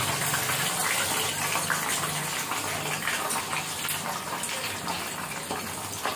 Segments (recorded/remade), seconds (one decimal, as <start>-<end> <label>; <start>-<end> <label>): 0.0-6.2 recorded